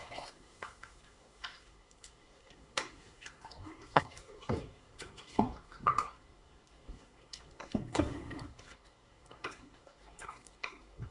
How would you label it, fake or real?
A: fake